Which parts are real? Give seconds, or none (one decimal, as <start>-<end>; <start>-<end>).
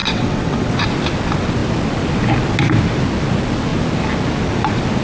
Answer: 0.7-5.0